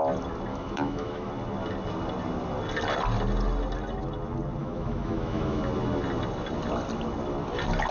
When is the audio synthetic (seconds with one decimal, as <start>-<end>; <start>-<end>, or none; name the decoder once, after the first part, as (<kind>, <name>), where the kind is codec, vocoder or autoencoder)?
0.5-1.3 (autoencoder, DAC-VAE); 4.6-5.6